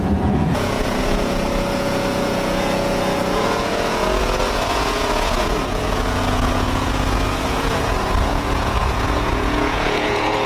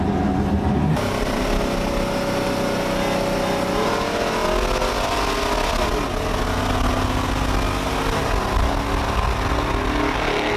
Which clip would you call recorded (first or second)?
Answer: second